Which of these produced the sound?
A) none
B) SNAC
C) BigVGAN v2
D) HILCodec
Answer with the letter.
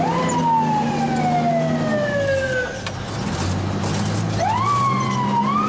A